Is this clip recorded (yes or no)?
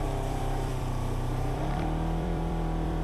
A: no